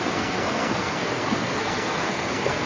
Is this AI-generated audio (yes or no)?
yes